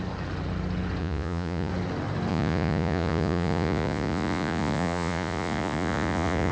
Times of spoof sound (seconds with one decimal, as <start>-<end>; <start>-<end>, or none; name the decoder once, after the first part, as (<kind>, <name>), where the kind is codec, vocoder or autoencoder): 1.0-1.7 (vocoder, Vocos); 2.3-6.5

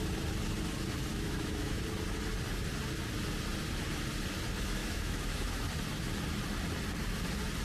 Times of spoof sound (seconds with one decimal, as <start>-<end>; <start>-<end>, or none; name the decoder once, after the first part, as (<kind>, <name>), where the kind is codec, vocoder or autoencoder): 1.1-1.8 (autoencoder, DAC-VAE); 4.8-5.7

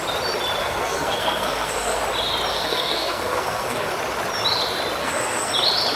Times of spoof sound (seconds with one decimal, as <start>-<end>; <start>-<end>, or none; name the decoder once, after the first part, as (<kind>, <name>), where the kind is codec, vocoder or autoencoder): 0.6-2.0 (codec, SNAC); 2.5-3.9; 5.0-5.5

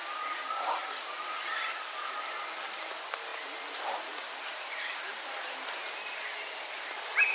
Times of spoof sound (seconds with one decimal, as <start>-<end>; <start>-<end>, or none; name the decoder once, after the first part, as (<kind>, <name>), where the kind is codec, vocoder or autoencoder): none

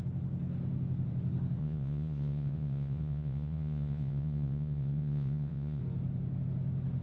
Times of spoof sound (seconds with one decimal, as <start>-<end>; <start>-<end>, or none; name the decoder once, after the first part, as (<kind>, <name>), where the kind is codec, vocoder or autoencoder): 1.6-5.8 (vocoder, Vocos)

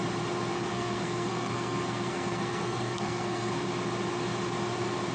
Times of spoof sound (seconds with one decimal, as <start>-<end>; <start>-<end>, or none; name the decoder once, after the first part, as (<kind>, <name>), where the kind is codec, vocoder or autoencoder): 0.5-3.6 (codec, SNAC)